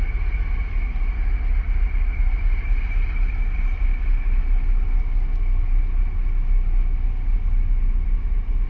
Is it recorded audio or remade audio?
recorded